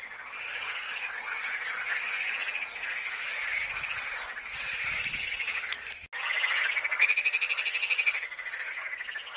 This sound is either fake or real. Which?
real